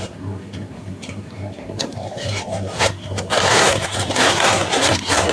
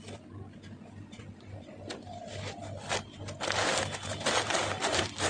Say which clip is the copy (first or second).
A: first